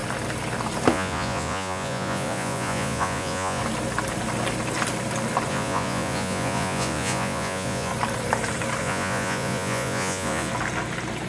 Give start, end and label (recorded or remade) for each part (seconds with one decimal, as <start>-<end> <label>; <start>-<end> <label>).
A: 0.0-0.9 recorded; 0.9-3.6 remade; 3.6-5.5 recorded; 5.5-7.9 remade; 7.9-8.8 recorded; 8.8-10.5 remade; 10.5-11.3 recorded